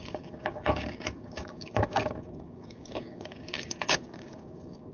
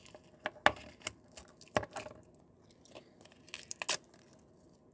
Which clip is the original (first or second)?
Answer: second